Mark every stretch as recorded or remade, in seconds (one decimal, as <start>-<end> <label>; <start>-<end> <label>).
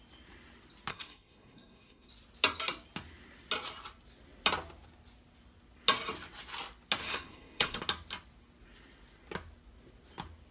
0.0-0.9 recorded; 0.9-2.1 remade; 2.1-7.0 recorded; 7.0-7.8 remade; 7.8-10.5 recorded